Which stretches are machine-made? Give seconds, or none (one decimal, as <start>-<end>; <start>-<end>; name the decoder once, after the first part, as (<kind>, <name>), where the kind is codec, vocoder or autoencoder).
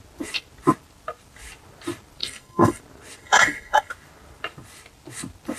2.2-2.8 (codec, SNAC); 3.2-3.9